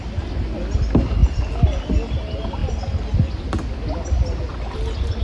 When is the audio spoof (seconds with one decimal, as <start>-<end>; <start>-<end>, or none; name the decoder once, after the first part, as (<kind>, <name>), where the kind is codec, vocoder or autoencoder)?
none

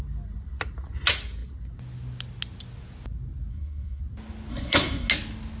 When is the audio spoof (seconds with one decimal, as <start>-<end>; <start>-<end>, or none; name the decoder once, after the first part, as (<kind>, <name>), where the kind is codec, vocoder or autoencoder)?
3.5-4.0 (codec, SNAC); 4.5-5.1

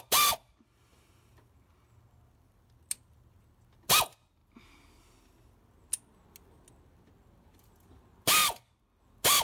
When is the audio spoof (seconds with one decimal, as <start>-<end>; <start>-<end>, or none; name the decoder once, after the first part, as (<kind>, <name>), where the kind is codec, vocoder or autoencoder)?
none

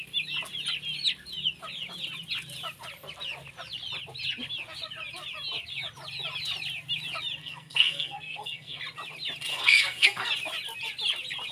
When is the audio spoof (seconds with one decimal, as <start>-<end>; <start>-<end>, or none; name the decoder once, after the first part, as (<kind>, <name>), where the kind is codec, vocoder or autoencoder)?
7.4-8.8 (codec, SNAC); 9.5-10.3

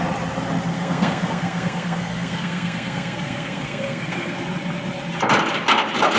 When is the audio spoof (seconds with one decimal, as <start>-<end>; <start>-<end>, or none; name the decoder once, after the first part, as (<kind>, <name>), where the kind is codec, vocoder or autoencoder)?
0.7-4.4 (codec, SNAC)

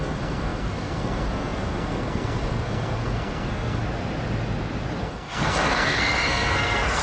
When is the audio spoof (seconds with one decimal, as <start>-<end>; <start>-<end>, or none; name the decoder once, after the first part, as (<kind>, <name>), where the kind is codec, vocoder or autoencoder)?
0.0-3.8 (codec, SNAC); 5.0-7.0

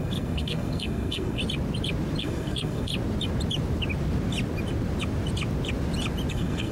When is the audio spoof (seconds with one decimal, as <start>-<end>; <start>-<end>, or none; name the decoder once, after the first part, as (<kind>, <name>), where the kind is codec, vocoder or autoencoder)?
0.0-1.4 (codec, SNAC); 2.2-2.9; 6.3-6.7

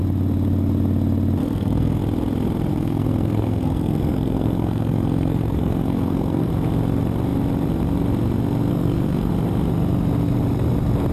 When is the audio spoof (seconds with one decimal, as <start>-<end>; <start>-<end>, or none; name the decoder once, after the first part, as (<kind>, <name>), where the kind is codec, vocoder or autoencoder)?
1.4-2.0 (codec, SNAC); 2.7-6.5; 8.7-9.3